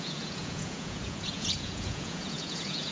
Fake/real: fake